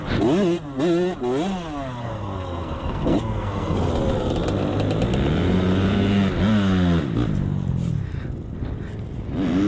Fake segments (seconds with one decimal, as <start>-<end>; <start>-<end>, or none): 2.0-3.9